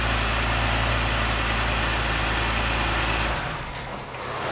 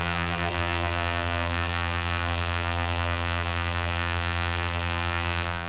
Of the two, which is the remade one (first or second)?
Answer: second